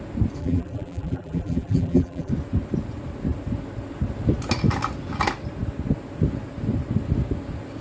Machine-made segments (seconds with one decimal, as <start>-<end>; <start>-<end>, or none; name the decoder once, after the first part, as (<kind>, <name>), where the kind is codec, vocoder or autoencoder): 0.4-2.3 (vocoder, BigVGAN v2)